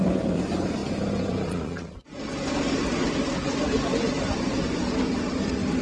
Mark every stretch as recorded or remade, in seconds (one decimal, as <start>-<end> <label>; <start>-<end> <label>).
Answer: 0.0-2.1 remade; 2.1-5.8 recorded